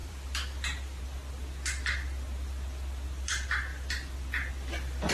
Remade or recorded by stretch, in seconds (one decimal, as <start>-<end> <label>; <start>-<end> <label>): 0.0-1.0 remade; 1.0-5.1 recorded

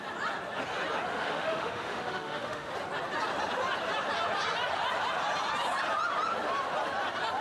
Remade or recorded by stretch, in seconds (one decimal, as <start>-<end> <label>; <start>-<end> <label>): 0.0-1.1 recorded; 1.1-2.7 remade; 2.7-7.4 recorded

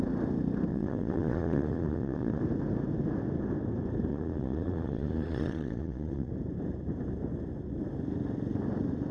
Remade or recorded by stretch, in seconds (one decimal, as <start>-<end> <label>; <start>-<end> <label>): 0.0-0.7 recorded; 0.7-2.4 remade; 2.4-4.1 recorded; 4.1-6.3 remade; 6.3-9.1 recorded

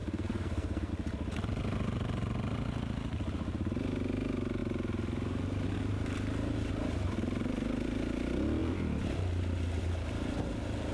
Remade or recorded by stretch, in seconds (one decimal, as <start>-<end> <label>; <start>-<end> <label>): 0.0-0.9 remade; 0.9-10.9 recorded

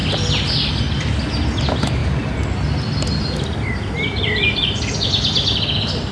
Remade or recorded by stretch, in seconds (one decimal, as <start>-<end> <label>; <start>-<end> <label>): 0.0-2.0 recorded; 2.0-2.6 remade; 2.6-6.1 recorded

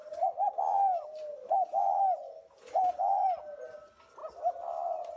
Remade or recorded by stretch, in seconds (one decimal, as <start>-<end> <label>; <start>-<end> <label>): 0.0-5.2 recorded

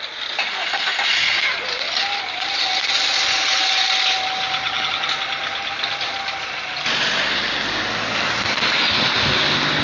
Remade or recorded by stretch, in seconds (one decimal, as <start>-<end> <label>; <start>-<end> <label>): 0.0-4.6 recorded; 4.6-5.1 remade; 5.1-9.8 recorded